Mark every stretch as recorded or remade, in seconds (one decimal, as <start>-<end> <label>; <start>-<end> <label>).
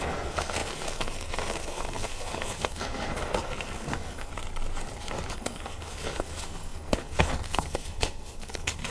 0.0-4.3 remade; 4.3-5.3 recorded; 5.3-8.9 remade